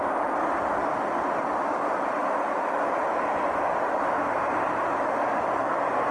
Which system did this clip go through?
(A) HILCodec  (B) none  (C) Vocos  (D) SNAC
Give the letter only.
B